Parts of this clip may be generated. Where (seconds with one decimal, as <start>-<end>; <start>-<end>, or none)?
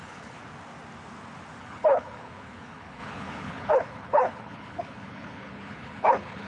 0.0-0.4; 1.6-6.5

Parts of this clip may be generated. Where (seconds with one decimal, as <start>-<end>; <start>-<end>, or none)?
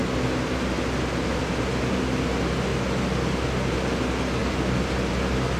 none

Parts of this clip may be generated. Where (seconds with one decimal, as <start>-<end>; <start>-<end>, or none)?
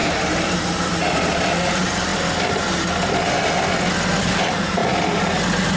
0.0-2.1; 4.2-4.8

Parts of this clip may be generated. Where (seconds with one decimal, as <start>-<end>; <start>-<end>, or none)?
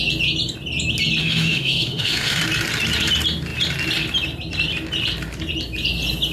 1.2-2.4